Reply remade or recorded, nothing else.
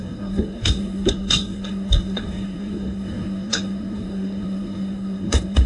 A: remade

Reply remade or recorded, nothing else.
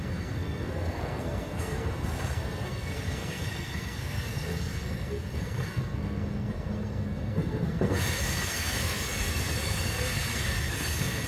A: remade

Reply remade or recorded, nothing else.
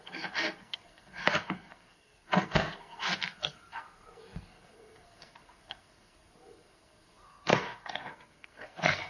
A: remade